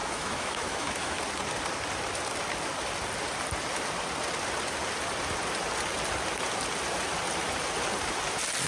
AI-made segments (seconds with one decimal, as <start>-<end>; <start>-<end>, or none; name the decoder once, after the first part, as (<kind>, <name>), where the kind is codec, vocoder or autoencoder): 0.0-1.2 (autoencoder, DAC-VAE)

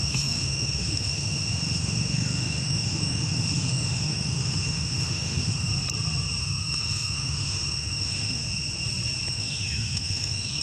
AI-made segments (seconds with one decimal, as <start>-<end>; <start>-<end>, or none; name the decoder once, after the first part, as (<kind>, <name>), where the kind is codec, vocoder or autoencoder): 0.0-5.7 (autoencoder, DAC-VAE); 6.4-8.4; 9.3-10.6